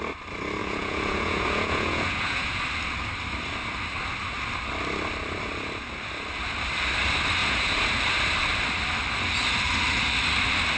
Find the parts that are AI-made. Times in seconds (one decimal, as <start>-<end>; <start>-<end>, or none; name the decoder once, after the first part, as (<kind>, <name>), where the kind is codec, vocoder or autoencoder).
0.6-2.6 (vocoder, Vocos); 7.4-8.0